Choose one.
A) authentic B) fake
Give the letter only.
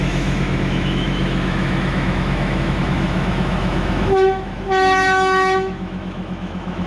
B